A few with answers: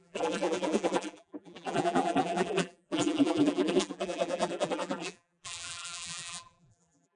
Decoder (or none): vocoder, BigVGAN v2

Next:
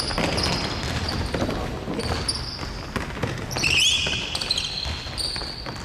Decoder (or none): none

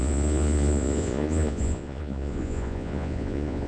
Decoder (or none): vocoder, Vocos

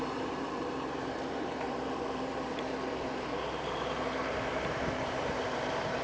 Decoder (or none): vocoder, BigVGAN v2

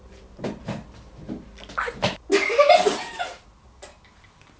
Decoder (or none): none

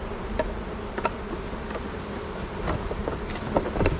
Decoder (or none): none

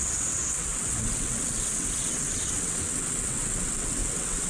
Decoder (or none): vocoder, WaveNeXt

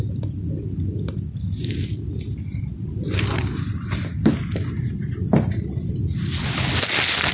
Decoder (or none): none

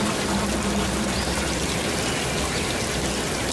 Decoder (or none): none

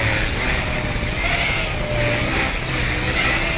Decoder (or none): none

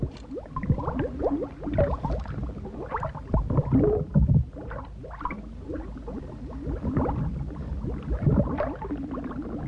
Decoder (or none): none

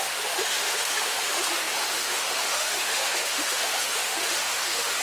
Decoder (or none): autoencoder, DAC-VAE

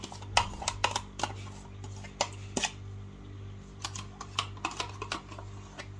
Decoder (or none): none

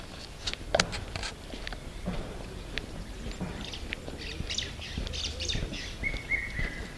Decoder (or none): vocoder, BigVGAN v2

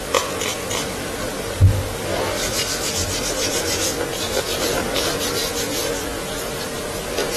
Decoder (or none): none